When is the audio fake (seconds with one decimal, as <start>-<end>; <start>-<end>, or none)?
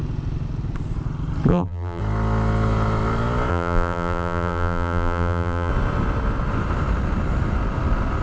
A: 1.5-2.0; 3.5-5.7